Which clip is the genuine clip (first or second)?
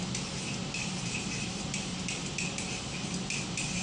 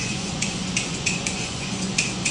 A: first